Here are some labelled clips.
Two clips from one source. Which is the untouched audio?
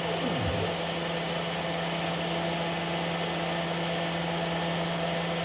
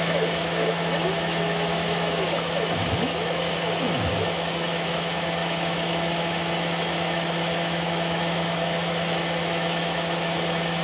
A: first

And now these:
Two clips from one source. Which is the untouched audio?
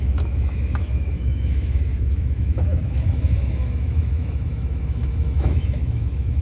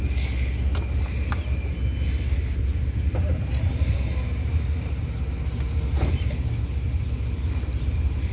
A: second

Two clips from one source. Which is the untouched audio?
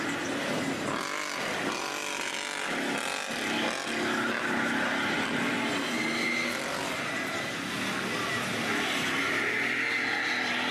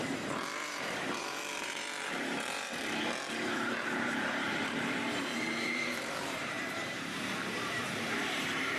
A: first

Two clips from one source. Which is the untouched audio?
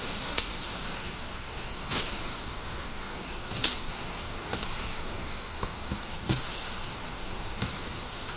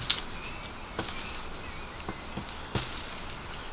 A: second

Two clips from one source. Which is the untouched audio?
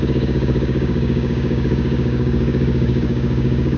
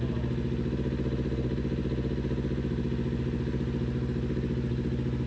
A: second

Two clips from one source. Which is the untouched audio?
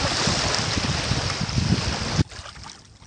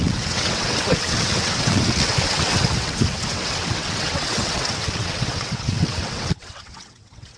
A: first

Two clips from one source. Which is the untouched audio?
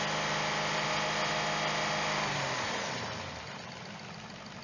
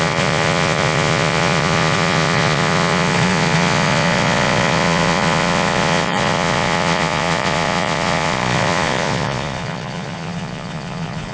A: first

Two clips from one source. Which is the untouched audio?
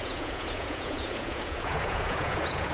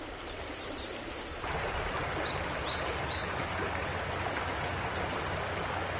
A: second